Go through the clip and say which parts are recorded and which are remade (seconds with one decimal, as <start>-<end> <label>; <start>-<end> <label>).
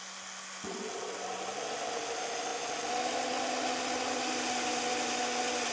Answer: 0.0-5.7 recorded